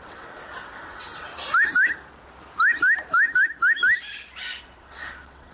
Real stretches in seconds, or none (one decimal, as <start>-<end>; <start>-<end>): 1.3-4.6

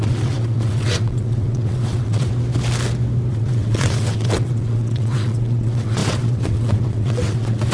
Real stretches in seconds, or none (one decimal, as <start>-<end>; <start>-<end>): 2.3-3.3

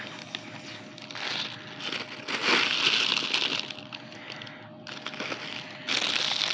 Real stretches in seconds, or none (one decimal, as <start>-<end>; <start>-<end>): 0.0-6.5

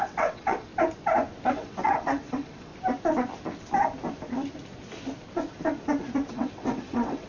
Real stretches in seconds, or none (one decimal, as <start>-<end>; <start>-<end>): 0.7-1.5; 2.7-6.3